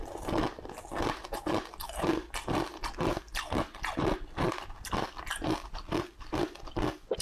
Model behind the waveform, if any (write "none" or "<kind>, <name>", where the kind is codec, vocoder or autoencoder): none